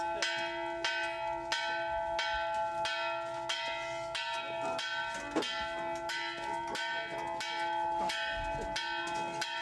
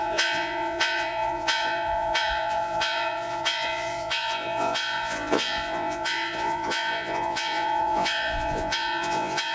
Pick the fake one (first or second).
second